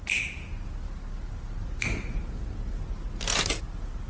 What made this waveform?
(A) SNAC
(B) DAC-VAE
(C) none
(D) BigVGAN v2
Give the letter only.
C